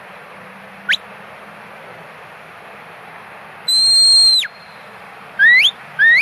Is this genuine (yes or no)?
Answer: yes